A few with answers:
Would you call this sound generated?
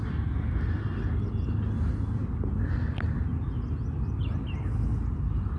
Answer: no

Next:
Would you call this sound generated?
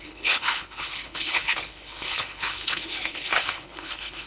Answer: yes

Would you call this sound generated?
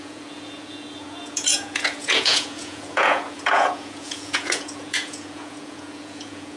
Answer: yes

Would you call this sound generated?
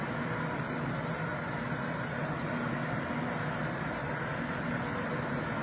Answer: no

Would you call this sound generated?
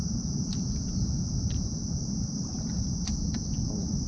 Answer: yes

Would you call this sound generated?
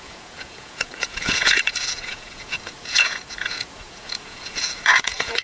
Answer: yes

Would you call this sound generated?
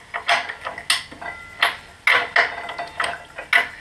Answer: no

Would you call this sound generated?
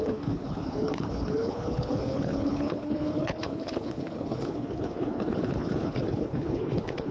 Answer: yes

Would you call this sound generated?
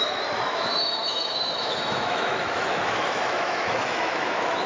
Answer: yes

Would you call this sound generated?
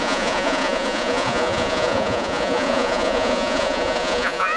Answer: yes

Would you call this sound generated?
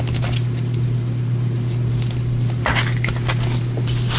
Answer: no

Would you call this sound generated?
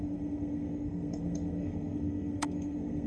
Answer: yes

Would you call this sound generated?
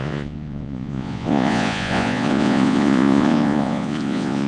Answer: yes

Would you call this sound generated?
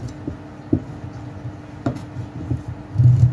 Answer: no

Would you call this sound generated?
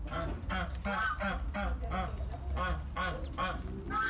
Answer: no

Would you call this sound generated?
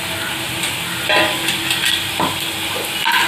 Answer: no